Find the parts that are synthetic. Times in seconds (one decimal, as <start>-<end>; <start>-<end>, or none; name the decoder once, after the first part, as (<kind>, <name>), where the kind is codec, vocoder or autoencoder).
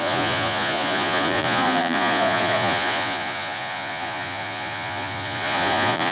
0.0-6.1 (vocoder, Vocos)